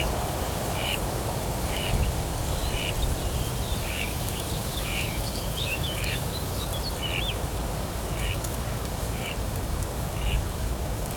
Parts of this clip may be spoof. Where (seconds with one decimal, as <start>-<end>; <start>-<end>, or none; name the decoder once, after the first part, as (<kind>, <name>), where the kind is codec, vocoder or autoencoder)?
0.0-2.8 (codec, DAC); 3.8-6.7; 7.3-11.2